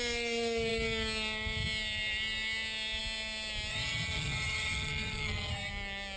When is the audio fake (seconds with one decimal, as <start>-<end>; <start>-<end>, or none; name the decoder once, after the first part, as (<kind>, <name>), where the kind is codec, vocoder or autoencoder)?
3.7-5.7 (vocoder, HiFi-GAN)